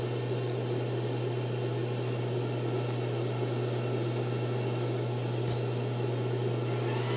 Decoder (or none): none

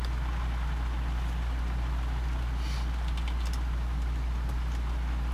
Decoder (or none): none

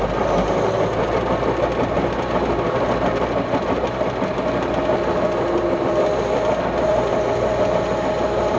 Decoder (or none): none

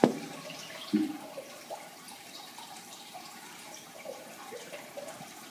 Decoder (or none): vocoder, BigVGAN v2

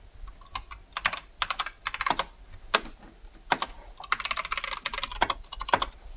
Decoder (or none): none